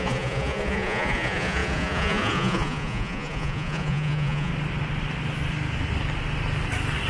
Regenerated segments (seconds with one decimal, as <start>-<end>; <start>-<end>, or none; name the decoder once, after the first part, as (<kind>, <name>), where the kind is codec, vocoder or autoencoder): 0.0-4.5 (vocoder, Vocos)